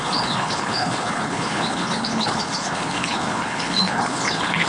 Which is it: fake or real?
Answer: fake